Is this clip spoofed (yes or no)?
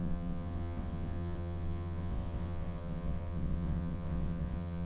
yes